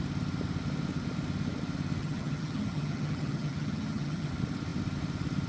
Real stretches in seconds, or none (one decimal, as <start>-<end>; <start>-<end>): 0.0-2.0; 4.3-5.5